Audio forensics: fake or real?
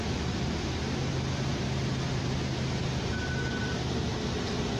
real